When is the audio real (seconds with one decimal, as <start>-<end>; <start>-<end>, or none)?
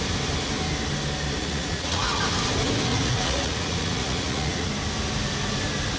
0.0-1.4; 2.2-2.9; 4.7-6.0